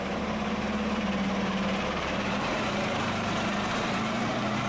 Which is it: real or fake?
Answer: fake